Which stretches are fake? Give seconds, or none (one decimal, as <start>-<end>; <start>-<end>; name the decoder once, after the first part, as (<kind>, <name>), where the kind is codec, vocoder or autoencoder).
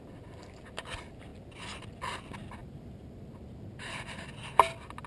2.6-3.4 (vocoder, BigVGAN v2)